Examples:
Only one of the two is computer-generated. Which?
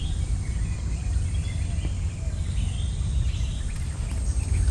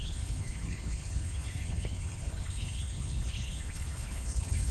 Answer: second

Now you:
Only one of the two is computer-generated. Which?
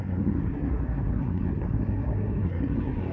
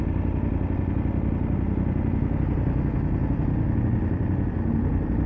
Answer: first